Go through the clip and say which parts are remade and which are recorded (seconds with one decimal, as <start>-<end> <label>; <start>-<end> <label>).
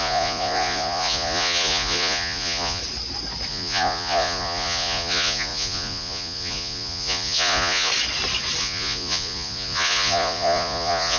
0.0-2.8 remade; 2.8-3.5 recorded; 3.5-7.9 remade; 7.9-8.6 recorded; 8.6-11.2 remade